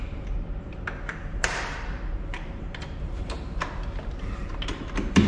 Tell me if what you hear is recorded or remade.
remade